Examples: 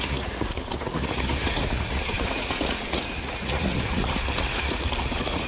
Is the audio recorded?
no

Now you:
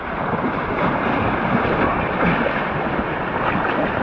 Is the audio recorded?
yes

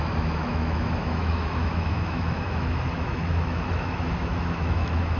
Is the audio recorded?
no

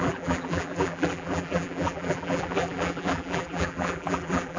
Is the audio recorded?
no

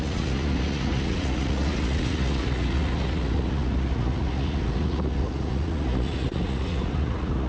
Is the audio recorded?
no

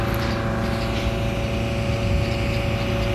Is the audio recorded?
yes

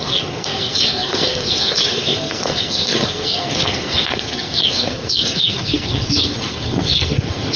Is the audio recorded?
no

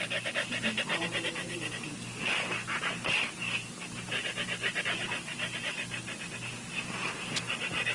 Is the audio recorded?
yes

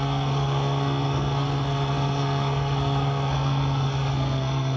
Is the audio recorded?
no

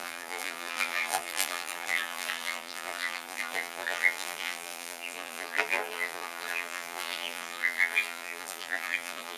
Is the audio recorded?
no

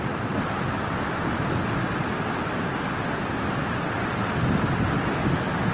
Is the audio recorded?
yes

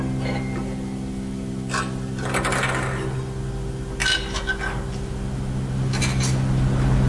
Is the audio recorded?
yes